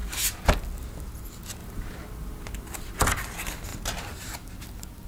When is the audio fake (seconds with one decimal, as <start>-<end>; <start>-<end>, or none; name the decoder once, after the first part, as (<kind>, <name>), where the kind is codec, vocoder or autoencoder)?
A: 1.6-3.0 (vocoder, BigVGAN v2); 3.7-4.6